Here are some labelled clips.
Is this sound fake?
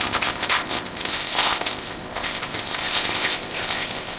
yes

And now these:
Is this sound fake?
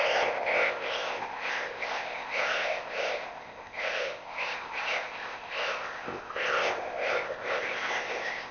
yes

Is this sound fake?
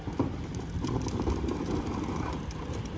no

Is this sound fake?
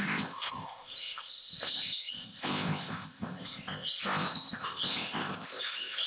yes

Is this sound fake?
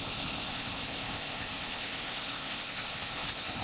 yes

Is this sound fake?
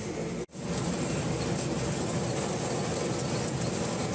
no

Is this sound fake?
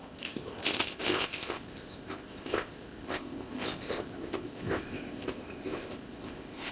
yes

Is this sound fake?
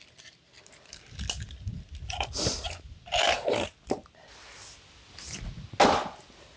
no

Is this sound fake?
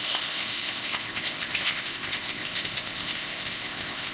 yes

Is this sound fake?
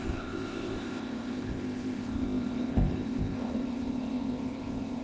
yes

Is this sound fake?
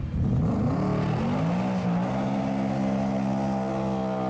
no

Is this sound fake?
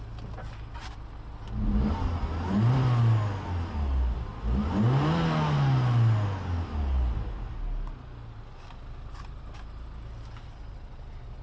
no